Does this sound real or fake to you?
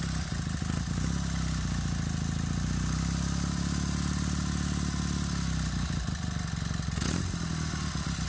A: real